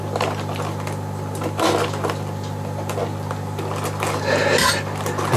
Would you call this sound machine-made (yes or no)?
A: no